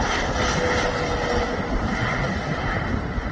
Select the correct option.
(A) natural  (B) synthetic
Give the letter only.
A